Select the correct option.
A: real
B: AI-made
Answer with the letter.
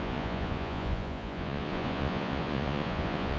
B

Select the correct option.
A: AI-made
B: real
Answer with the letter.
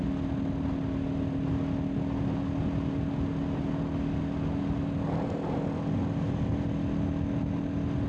B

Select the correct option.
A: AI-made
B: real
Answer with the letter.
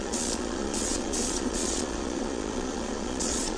A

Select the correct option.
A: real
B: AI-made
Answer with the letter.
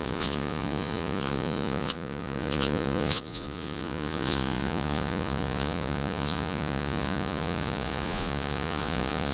B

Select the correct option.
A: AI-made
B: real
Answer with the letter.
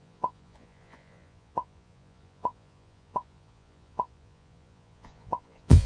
A